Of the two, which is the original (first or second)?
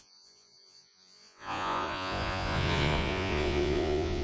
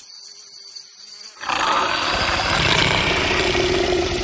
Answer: second